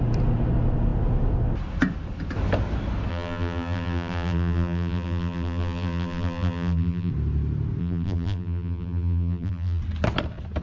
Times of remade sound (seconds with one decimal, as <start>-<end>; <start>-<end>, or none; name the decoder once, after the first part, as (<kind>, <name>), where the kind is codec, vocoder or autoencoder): 3.1-7.1 (vocoder, BigVGAN v2); 7.8-9.8